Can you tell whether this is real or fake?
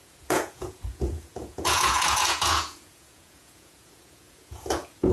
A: fake